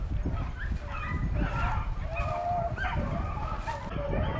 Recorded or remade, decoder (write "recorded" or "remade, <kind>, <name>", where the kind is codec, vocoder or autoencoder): recorded